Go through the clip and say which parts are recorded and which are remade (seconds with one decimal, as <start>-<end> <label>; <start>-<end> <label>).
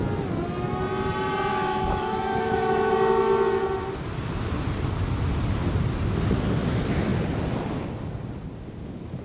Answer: 0.0-1.5 recorded; 1.5-2.9 remade; 2.9-9.2 recorded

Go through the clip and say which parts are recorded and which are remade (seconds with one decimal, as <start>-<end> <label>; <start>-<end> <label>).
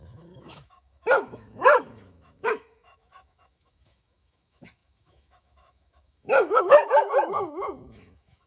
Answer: 0.0-8.5 remade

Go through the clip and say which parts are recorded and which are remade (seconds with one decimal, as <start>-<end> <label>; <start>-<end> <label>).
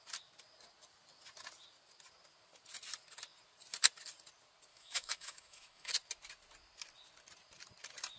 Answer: 0.0-4.7 recorded; 4.7-5.9 remade; 5.9-8.2 recorded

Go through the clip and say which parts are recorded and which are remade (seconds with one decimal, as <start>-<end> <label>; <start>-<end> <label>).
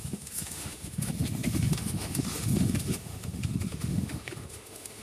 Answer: 0.0-5.0 remade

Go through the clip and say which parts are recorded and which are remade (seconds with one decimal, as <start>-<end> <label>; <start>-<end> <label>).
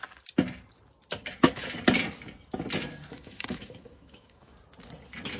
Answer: 0.0-1.2 recorded; 1.2-1.8 remade; 1.8-3.1 recorded; 3.1-4.5 remade; 4.5-5.4 recorded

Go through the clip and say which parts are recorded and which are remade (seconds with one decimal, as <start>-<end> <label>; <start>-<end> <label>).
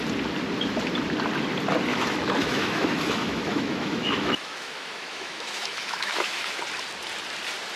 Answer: 0.0-1.9 recorded; 1.9-6.6 remade; 6.6-7.8 recorded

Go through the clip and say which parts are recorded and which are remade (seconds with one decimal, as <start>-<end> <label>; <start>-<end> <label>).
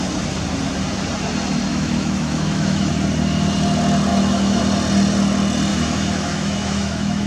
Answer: 0.0-1.7 recorded; 1.7-2.9 remade; 2.9-4.1 recorded; 4.1-4.6 remade; 4.6-5.7 recorded; 5.7-7.3 remade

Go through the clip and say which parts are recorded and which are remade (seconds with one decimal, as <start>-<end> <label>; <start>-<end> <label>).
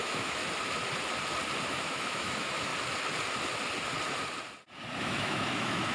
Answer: 0.0-0.4 remade; 0.4-1.7 recorded; 1.7-2.7 remade; 2.7-5.0 recorded; 5.0-5.9 remade